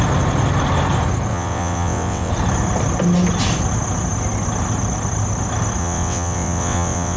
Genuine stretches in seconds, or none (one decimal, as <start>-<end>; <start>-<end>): 0.0-1.3; 2.3-5.8